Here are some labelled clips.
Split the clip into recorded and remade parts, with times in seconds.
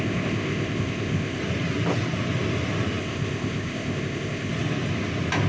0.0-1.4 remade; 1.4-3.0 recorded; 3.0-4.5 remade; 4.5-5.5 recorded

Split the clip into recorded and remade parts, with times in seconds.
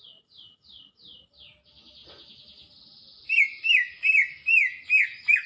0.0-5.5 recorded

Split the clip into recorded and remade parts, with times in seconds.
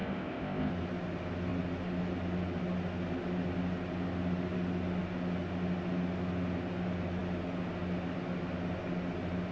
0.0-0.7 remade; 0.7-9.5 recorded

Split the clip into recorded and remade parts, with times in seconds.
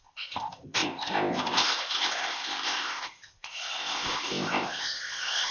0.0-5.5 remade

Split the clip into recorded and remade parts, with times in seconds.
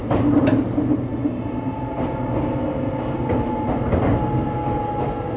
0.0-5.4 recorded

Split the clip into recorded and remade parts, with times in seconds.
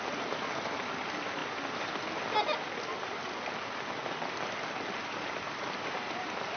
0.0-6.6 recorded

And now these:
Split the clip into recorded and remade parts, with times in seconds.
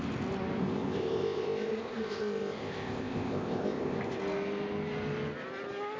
0.0-0.6 recorded; 0.6-4.2 remade; 4.2-6.0 recorded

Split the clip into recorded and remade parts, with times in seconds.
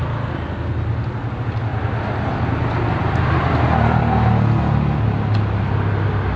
0.0-6.4 recorded